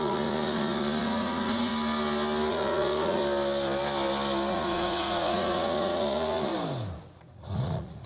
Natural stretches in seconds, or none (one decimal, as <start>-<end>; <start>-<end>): 1.7-2.5; 3.2-4.5; 6.5-7.1